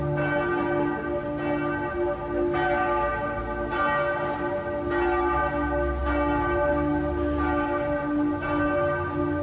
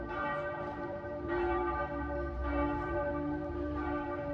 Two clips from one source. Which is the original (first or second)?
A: first